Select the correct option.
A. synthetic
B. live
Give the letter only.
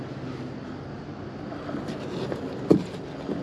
B